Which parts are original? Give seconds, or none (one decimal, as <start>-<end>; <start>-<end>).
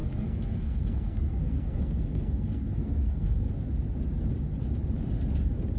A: 3.5-5.8